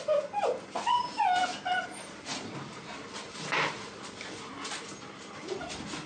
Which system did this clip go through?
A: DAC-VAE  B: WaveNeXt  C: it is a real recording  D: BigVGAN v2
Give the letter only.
C